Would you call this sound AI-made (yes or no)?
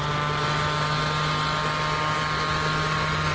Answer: no